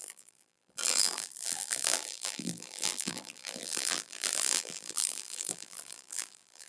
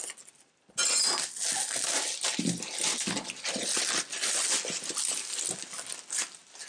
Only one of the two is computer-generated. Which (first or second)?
first